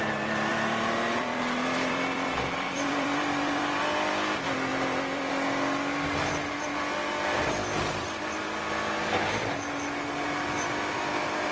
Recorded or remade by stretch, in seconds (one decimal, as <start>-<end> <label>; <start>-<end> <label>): 0.0-0.5 recorded; 0.5-3.8 remade; 3.8-4.7 recorded; 4.7-5.3 remade; 5.3-11.5 recorded